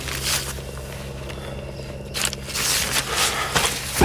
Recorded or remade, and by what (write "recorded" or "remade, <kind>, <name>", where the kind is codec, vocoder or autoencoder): recorded